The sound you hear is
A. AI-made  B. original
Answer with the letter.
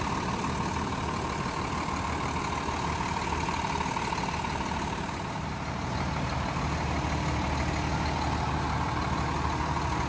B